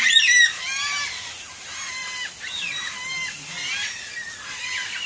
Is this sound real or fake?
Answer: real